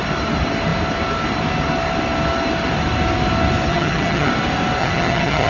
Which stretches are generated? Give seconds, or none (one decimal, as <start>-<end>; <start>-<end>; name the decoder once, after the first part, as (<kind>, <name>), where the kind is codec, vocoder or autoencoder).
3.7-4.3 (vocoder, HiFi-GAN); 4.8-5.5